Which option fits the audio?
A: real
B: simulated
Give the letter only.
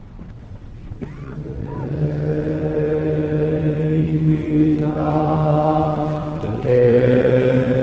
B